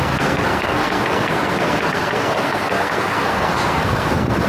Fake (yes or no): yes